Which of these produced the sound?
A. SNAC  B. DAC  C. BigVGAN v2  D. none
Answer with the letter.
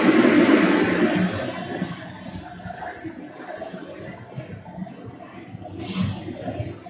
D